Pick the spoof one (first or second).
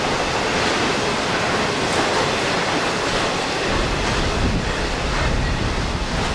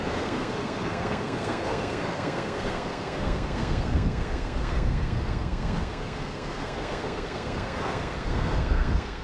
second